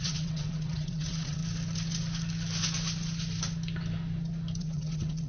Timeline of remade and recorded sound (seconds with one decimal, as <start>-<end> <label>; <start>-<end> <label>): 0.0-1.4 remade; 1.4-4.6 recorded; 4.6-5.3 remade